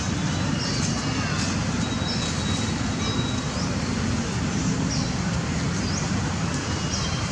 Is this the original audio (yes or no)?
yes